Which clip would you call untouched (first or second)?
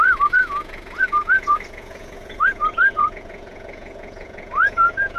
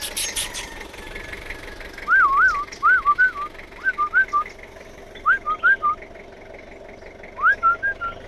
second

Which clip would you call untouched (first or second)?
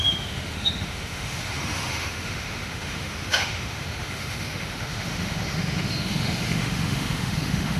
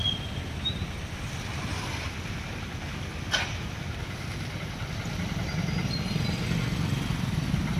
second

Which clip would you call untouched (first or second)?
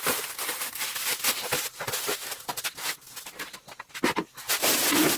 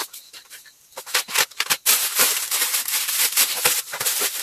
first